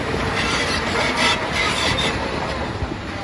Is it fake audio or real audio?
fake